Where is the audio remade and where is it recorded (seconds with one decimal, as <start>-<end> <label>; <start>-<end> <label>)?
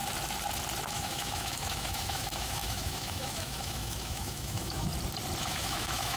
0.0-0.9 recorded; 0.9-4.9 remade; 4.9-5.4 recorded; 5.4-6.2 remade